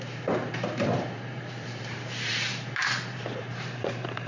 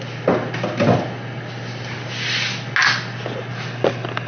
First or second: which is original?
second